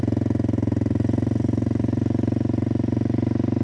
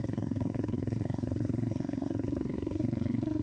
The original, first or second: first